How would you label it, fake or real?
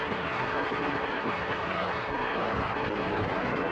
fake